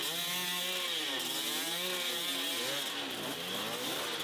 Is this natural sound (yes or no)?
yes